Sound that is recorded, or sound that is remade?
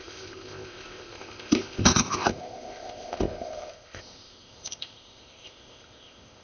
remade